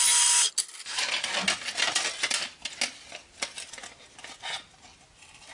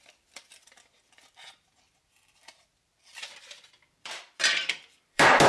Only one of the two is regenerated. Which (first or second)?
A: second